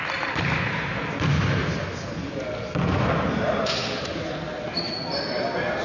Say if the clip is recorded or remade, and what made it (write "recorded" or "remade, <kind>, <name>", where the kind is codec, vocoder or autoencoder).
recorded